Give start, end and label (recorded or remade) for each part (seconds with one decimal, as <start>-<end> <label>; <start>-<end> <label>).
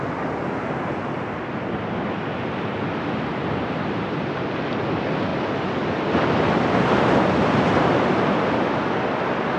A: 0.0-5.3 recorded; 5.3-8.8 remade; 8.8-9.6 recorded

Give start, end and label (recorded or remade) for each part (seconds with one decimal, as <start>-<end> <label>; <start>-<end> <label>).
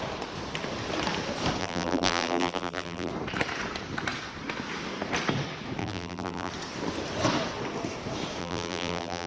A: 0.0-1.6 recorded; 1.6-3.1 remade; 3.1-5.8 recorded; 5.8-6.5 remade; 6.5-8.4 recorded; 8.4-9.3 remade